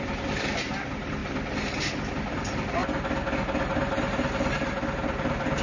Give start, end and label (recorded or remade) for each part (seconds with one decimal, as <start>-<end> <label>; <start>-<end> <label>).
0.0-1.2 remade; 1.2-2.1 recorded; 2.1-2.8 remade; 2.8-5.6 recorded